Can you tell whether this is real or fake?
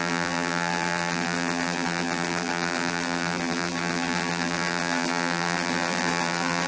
fake